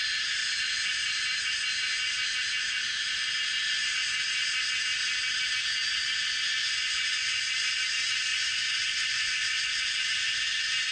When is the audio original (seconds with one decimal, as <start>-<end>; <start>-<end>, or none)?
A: 0.0-6.6; 7.4-8.3; 9.6-10.9